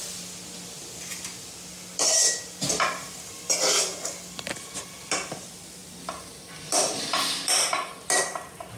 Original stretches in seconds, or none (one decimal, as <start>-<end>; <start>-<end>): 0.0-8.8